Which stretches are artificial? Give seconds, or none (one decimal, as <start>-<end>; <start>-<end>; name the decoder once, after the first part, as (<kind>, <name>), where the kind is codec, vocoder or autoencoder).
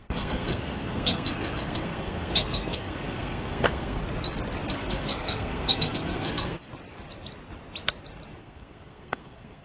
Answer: 0.0-4.0 (codec, SNAC); 4.7-6.7; 8.4-9.6